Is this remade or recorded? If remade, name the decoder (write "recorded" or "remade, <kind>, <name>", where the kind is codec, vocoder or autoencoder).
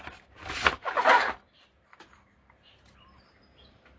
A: recorded